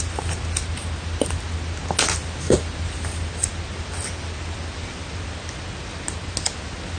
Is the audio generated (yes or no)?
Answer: no